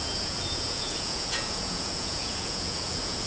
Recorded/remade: remade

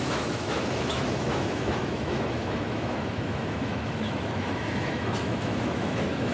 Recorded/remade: remade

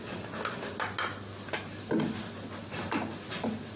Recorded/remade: recorded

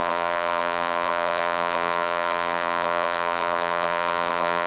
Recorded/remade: remade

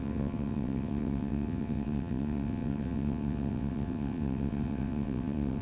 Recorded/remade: remade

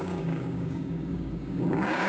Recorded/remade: remade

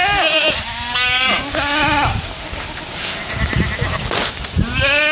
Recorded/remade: recorded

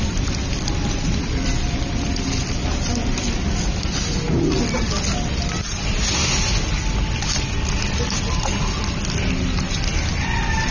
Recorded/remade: recorded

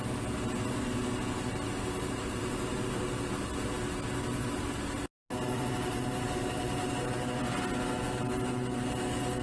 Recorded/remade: recorded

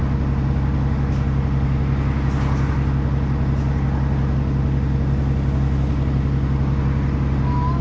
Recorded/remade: recorded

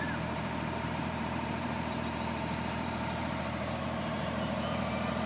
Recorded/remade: remade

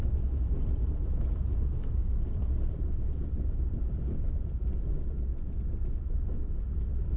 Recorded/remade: recorded